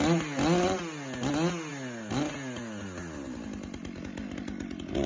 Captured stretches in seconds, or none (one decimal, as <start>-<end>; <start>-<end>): 0.0-5.1